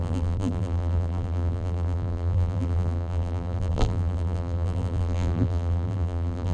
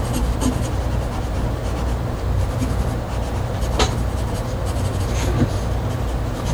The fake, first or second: first